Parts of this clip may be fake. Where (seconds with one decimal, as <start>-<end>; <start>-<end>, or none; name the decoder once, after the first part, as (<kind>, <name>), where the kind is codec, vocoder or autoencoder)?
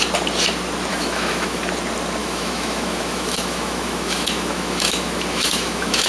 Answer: 0.9-1.6 (autoencoder, DAC-VAE); 2.2-6.1